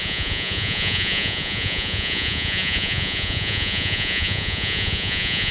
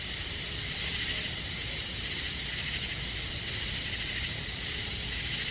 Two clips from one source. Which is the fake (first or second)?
first